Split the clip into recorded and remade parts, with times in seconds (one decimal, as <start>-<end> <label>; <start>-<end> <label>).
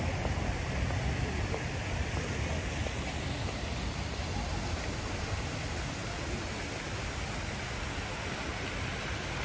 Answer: 0.0-9.4 recorded